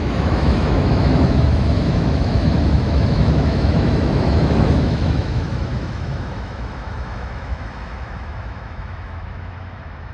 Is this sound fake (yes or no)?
yes